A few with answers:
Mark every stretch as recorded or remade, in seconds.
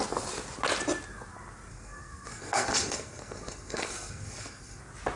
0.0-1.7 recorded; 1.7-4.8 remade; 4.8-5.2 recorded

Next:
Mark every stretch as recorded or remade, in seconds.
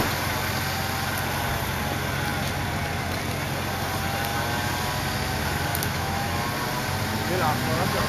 0.0-5.7 recorded; 5.7-6.4 remade; 6.4-8.1 recorded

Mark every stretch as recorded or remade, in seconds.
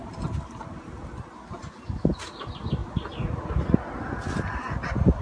0.0-5.2 recorded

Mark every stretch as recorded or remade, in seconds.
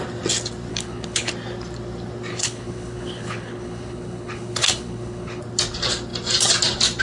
0.0-0.7 recorded; 0.7-1.3 remade; 1.3-2.3 recorded; 2.3-5.4 remade; 5.4-7.0 recorded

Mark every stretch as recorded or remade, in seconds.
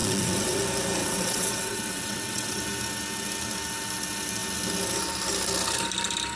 0.0-0.6 remade; 0.6-1.0 recorded; 1.0-2.6 remade; 2.6-6.4 recorded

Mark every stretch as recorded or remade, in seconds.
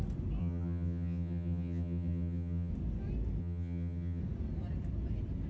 0.0-0.4 recorded; 0.4-2.7 remade; 2.7-3.4 recorded; 3.4-4.2 remade; 4.2-5.5 recorded